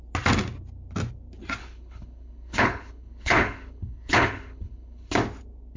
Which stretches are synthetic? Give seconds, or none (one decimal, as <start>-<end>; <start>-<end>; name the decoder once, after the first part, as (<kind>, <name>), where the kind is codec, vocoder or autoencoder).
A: 1.6-5.1 (codec, HILCodec)